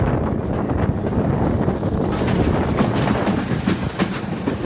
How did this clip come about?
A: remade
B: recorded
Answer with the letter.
B